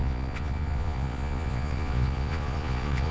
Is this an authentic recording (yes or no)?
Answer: no